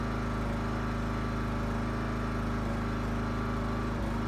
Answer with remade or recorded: recorded